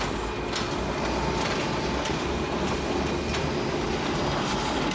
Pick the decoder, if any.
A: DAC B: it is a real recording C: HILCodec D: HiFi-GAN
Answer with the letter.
B